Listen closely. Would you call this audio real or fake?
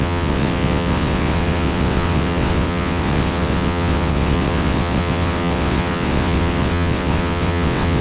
fake